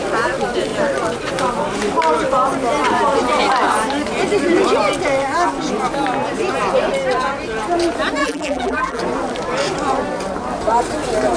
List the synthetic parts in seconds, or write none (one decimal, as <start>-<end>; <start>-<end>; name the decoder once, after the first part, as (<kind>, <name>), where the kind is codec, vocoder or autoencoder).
8.2-9.0 (vocoder, BigVGAN v2)